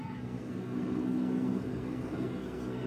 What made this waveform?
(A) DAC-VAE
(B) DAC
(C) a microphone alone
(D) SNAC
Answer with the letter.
D